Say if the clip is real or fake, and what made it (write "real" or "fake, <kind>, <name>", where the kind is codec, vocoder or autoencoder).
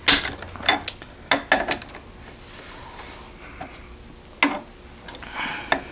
real